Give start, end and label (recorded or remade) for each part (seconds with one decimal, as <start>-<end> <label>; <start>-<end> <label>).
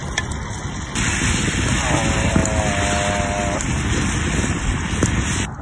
0.0-5.6 recorded